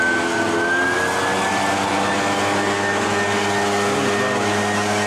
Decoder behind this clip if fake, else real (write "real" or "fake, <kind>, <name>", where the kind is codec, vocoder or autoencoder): real